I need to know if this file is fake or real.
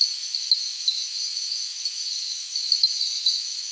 fake